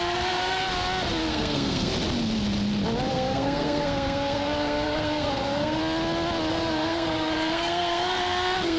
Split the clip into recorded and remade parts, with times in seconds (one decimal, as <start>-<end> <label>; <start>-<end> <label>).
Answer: 0.0-0.6 remade; 0.6-1.3 recorded; 1.3-1.9 remade; 1.9-3.1 recorded; 3.1-5.8 remade; 5.8-6.5 recorded; 6.5-8.8 remade